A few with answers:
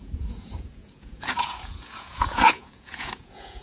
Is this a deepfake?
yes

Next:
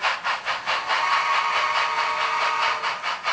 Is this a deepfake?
no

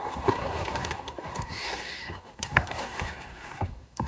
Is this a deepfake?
yes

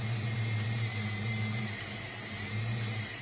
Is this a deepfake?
yes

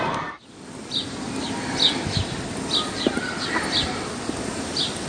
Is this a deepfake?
no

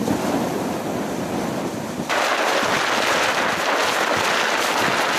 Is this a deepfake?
no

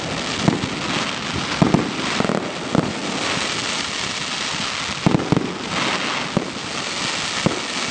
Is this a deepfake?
no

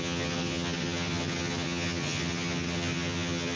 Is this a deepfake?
yes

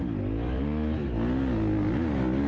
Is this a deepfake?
no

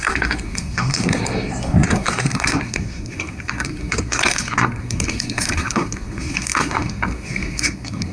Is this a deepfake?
yes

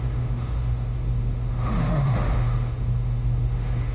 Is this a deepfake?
yes